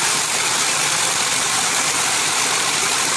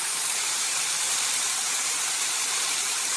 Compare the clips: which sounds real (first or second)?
first